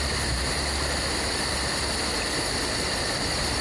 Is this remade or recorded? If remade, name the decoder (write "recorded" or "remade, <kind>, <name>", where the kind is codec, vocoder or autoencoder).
recorded